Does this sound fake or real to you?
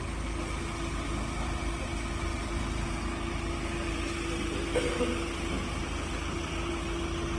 real